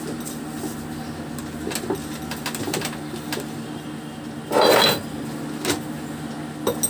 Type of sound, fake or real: real